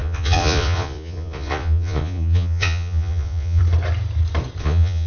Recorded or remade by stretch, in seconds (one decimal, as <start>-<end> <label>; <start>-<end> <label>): 0.0-3.6 remade; 3.6-4.6 recorded; 4.6-5.1 remade